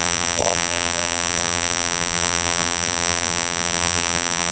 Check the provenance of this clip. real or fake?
fake